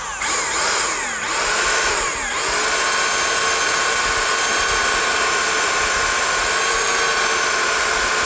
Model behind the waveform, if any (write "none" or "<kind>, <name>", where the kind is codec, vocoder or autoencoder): none